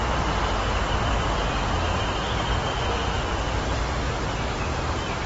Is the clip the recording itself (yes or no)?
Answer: yes